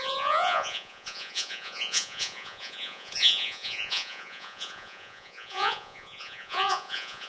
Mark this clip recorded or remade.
remade